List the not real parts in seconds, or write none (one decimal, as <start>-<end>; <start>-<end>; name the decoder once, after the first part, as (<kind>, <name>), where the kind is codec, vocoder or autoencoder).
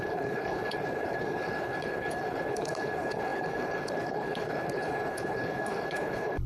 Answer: 0.0-6.5 (codec, HILCodec)